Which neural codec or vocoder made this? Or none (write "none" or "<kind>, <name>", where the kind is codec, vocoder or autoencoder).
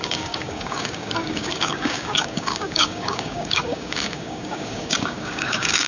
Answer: codec, DAC